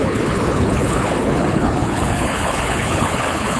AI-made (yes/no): yes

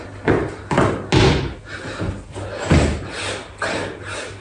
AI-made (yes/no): no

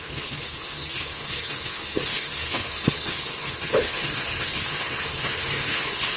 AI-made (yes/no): yes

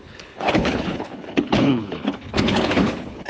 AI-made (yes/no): yes